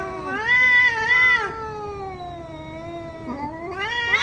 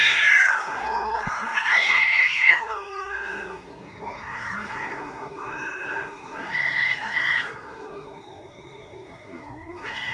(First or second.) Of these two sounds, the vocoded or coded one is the second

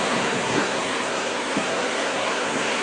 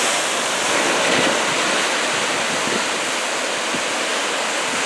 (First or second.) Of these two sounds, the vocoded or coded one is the first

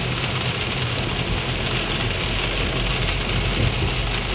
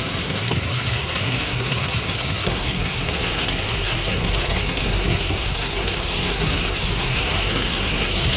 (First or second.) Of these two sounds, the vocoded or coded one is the second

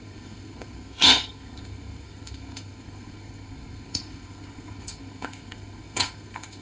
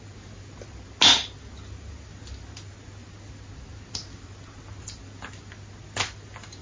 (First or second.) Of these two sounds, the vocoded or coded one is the first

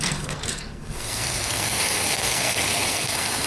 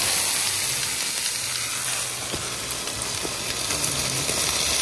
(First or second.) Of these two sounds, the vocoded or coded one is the first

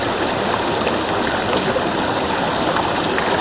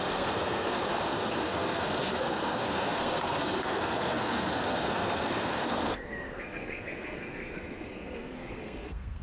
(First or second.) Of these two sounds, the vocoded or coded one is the second